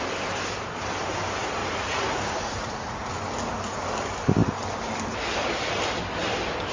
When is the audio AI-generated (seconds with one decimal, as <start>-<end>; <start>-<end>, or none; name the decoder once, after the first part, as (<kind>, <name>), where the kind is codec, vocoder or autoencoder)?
1.6-3.1 (vocoder, Vocos)